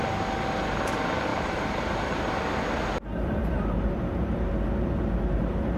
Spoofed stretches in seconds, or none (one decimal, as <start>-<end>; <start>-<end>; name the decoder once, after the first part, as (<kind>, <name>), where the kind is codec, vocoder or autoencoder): 1.3-2.3 (vocoder, BigVGAN v2); 3.4-4.5